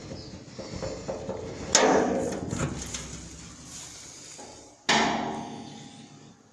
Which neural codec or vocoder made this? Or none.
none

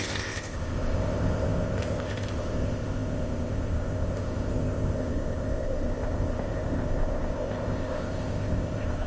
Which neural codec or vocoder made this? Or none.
codec, ZipCodec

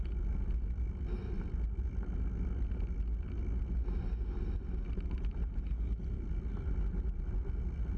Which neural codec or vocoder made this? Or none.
none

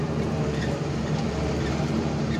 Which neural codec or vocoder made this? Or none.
vocoder, BigVGAN v2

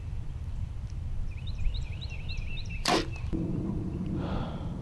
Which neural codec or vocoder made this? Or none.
vocoder, BigVGAN v2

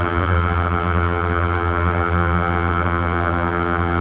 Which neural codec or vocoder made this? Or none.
vocoder, BigVGAN v2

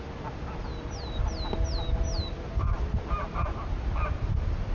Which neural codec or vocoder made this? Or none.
none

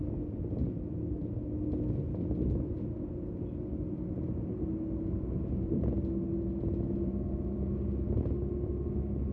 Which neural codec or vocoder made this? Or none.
none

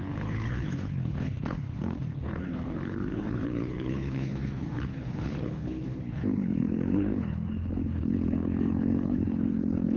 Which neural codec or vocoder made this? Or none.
codec, HILCodec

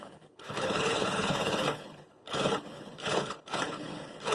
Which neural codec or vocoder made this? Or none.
codec, HILCodec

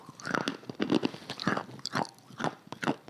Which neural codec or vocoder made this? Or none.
none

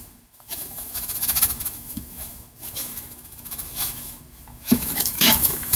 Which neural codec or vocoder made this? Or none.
autoencoder, DAC-VAE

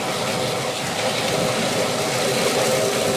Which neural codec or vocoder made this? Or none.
none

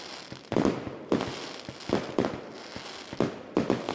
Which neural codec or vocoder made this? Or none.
none